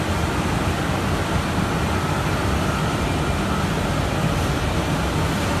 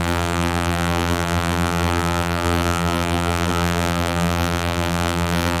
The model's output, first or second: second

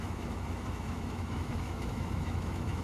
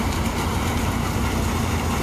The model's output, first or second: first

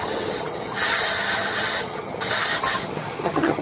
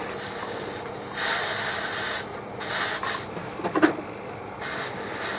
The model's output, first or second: first